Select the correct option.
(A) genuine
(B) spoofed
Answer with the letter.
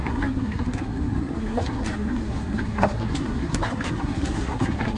B